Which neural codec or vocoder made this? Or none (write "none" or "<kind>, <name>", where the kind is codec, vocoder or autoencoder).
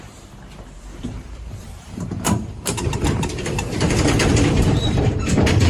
vocoder, BigVGAN v2